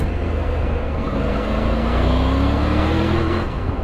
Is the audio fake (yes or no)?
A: yes